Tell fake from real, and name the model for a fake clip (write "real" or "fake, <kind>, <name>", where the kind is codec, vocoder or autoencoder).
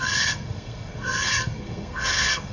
fake, codec, SNAC